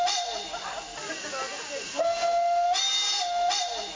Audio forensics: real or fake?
real